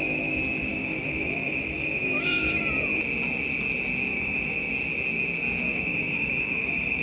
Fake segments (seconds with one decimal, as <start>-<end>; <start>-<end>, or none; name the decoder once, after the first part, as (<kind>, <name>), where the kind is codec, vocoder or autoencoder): 0.7-2.6 (autoencoder, DAC-VAE); 4.1-4.7; 5.7-7.0